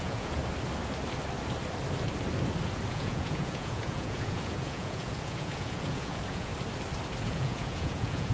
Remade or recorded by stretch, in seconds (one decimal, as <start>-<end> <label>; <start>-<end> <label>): 0.0-0.4 remade; 0.4-2.9 recorded; 2.9-6.5 remade; 6.5-7.2 recorded; 7.2-8.3 remade